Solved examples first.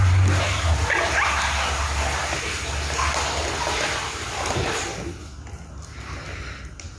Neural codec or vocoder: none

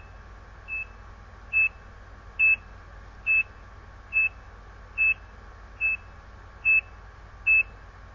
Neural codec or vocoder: none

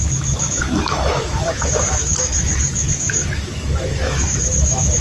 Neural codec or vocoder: autoencoder, DAC-VAE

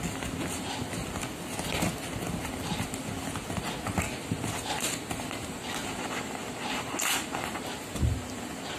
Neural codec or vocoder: none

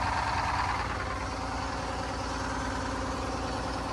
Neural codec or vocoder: none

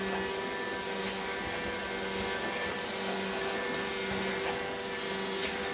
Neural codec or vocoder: none